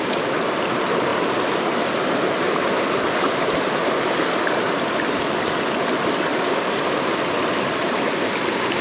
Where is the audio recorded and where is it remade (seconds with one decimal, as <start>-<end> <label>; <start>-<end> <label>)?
0.0-8.8 recorded